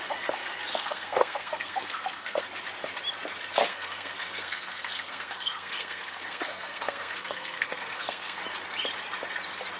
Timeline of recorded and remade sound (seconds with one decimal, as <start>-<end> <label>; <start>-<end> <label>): 0.0-0.7 recorded; 0.7-2.4 remade; 2.4-3.7 recorded; 3.7-8.4 remade; 8.4-9.8 recorded